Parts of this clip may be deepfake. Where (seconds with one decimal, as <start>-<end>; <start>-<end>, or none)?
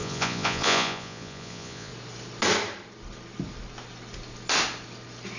0.0-1.9